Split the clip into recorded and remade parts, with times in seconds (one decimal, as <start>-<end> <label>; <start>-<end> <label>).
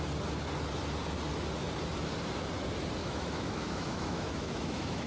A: 0.0-3.0 recorded; 3.0-5.1 remade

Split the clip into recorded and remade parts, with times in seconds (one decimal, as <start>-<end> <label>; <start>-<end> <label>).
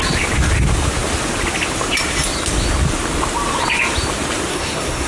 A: 0.0-4.5 recorded; 4.5-5.1 remade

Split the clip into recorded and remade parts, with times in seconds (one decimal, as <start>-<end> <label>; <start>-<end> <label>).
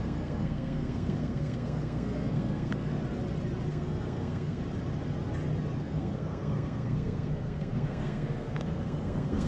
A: 0.0-3.0 remade; 3.0-3.7 recorded; 3.7-4.6 remade; 4.6-5.8 recorded; 5.8-9.5 remade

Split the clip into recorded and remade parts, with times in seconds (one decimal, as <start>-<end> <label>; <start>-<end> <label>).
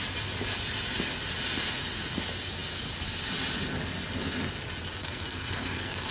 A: 0.0-5.0 recorded; 5.0-6.1 remade